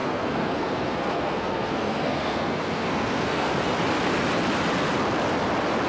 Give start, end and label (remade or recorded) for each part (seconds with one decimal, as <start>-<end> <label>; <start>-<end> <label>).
0.0-3.5 remade; 3.5-5.9 recorded